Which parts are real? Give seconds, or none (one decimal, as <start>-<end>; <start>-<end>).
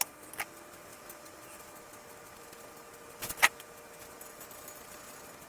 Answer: 0.0-5.5